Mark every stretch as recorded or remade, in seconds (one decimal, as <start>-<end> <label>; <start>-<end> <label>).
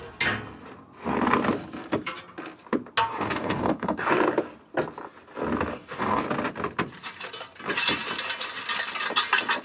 0.0-3.1 recorded; 3.1-4.1 remade; 4.1-5.7 recorded; 5.7-6.2 remade; 6.2-9.6 recorded